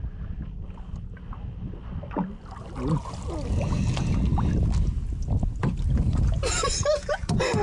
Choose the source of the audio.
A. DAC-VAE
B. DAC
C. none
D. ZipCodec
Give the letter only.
C